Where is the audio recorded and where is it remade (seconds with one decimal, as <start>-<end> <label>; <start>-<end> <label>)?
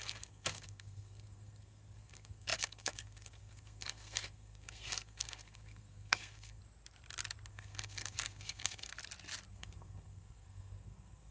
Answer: 0.0-6.6 remade; 6.6-7.5 recorded; 7.5-8.9 remade; 8.9-9.5 recorded; 9.5-11.3 remade